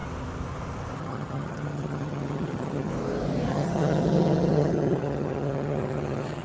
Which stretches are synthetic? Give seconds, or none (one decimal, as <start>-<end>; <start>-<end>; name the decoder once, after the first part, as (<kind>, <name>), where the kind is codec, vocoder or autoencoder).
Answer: 1.0-2.9 (vocoder, HiFi-GAN); 3.5-6.4